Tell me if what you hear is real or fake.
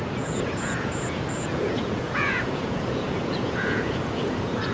fake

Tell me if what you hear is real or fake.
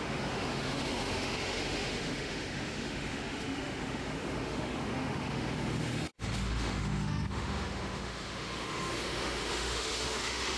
fake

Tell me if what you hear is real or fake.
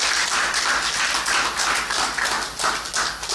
real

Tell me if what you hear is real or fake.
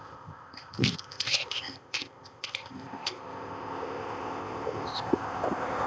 fake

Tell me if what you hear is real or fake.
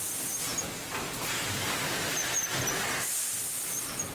real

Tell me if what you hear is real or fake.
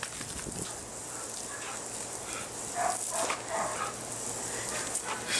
real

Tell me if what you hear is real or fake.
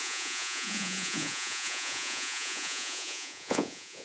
fake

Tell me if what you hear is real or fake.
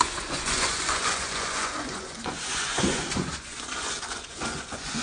fake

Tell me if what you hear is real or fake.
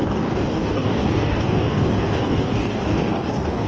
fake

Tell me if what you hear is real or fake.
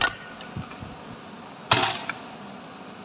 real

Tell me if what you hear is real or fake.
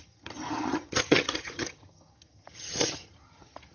fake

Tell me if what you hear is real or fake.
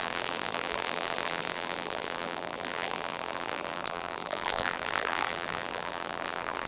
fake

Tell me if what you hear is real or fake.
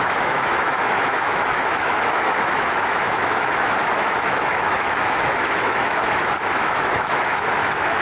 fake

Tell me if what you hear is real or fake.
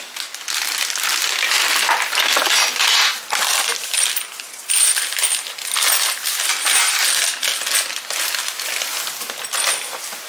real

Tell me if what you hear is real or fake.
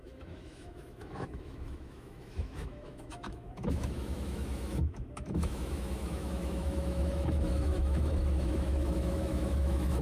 fake